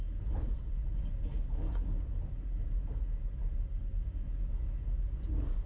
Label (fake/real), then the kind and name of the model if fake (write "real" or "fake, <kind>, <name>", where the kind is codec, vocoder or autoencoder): real